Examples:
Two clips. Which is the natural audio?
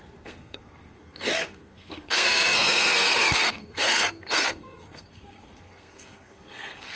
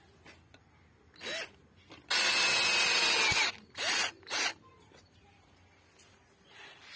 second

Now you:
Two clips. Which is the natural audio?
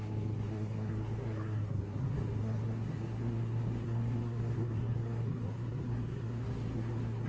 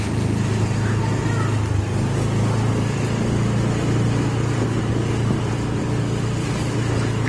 second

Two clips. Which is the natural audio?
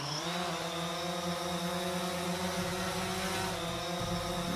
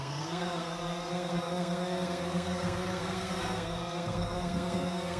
first